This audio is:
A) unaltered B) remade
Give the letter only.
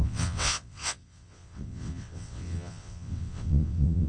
B